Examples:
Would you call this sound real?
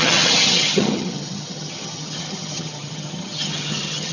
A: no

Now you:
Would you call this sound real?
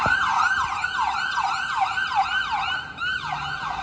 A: yes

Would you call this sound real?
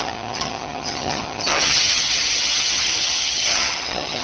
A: no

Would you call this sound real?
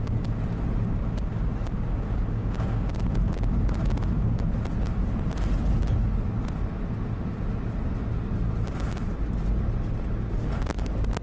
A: yes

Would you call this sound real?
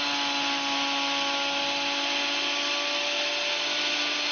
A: yes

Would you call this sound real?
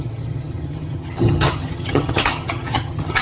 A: no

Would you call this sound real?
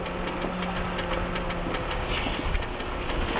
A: yes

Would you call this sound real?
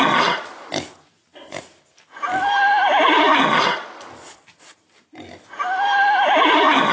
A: yes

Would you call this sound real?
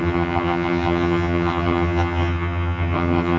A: no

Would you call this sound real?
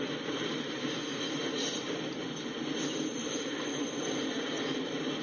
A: yes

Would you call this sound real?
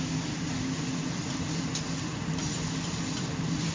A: yes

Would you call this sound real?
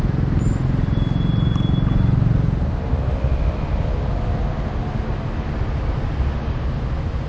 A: yes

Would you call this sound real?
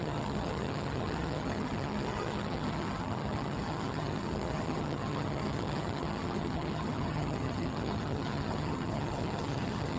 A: no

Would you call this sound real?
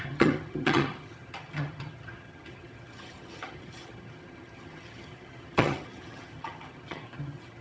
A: no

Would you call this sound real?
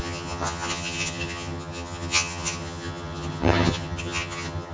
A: no